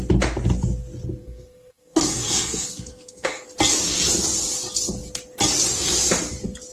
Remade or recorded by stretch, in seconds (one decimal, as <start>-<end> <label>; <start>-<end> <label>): 0.0-1.2 recorded; 1.2-3.5 remade; 3.5-6.7 recorded